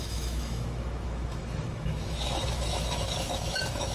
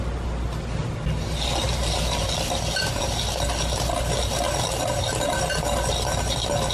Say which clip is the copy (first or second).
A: first